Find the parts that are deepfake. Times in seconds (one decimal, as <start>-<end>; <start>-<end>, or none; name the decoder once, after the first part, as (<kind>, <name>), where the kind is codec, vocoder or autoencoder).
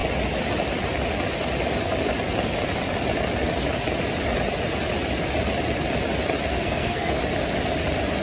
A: 6.5-7.2 (codec, SNAC)